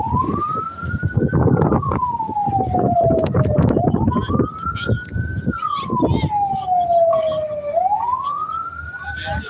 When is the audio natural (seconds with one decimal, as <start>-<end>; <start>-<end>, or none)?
0.0-9.5